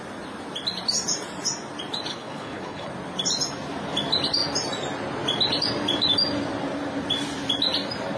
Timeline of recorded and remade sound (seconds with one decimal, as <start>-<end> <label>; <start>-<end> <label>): 0.0-2.1 recorded; 2.1-2.9 remade; 2.9-8.2 recorded

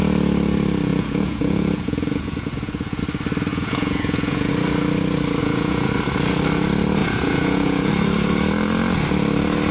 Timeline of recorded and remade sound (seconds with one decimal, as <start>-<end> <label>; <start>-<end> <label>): 0.0-0.9 recorded; 0.9-3.0 remade; 3.0-3.5 recorded; 3.5-4.5 remade; 4.5-5.4 recorded; 5.4-5.9 remade; 5.9-7.0 recorded; 7.0-7.9 remade; 7.9-9.7 recorded